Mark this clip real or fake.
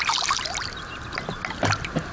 real